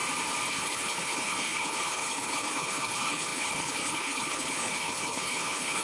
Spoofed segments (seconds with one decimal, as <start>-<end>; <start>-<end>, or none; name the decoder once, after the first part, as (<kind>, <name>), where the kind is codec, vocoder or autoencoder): 0.5-5.8 (codec, HILCodec)